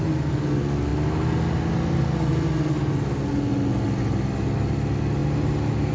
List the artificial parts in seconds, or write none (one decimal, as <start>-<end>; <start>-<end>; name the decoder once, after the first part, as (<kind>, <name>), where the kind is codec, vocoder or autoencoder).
none